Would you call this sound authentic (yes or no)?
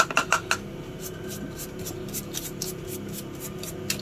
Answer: yes